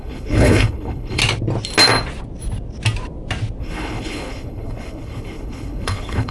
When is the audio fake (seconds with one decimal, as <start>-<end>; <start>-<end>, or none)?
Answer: 0.0-1.2; 3.6-6.3